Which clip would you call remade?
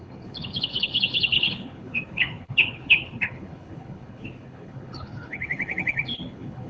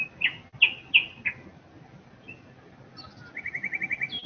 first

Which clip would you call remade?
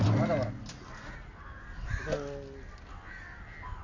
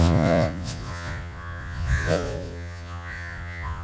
second